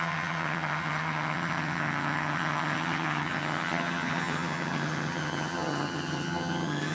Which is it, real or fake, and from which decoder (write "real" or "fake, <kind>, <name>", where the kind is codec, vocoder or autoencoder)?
fake, vocoder, HiFi-GAN